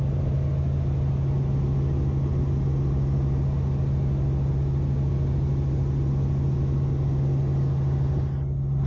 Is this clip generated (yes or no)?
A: no